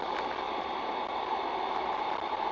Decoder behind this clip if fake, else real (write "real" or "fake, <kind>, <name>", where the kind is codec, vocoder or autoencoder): real